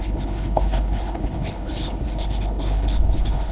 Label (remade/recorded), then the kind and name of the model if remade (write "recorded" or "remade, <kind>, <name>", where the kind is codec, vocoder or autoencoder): remade, codec, HILCodec